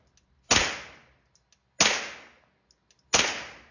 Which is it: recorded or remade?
recorded